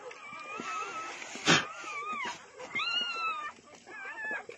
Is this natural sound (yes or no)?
yes